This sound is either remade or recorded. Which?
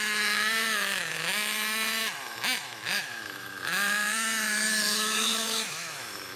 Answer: remade